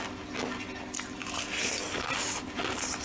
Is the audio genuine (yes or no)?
yes